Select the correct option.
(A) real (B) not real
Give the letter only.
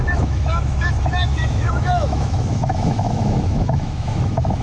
B